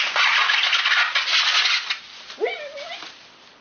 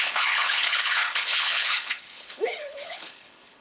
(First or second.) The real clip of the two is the first